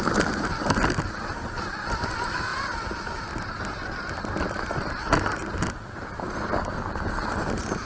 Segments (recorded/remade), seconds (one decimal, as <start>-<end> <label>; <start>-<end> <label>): 0.0-7.9 recorded

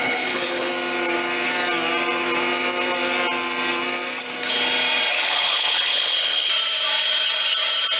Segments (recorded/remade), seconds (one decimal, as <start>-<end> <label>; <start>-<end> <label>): 0.0-0.7 remade; 0.7-5.1 recorded; 5.1-6.5 remade; 6.5-8.0 recorded

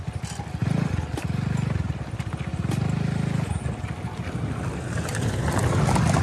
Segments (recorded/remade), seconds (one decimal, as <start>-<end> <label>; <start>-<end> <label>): 0.0-6.2 recorded

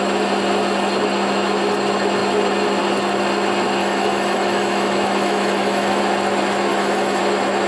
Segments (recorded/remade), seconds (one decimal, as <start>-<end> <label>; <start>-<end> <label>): 0.0-3.8 recorded; 3.8-6.0 remade; 6.0-6.7 recorded; 6.7-7.2 remade; 7.2-7.7 recorded